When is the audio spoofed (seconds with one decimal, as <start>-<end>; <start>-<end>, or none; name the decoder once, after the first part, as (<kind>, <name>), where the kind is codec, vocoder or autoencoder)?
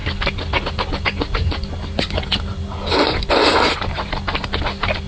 none